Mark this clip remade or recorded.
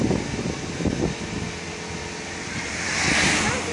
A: recorded